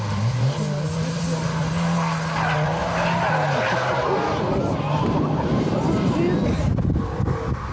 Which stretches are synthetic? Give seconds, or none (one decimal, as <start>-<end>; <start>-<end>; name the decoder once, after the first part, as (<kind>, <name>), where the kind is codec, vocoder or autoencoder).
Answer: none